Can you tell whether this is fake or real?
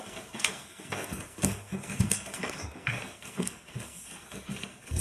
fake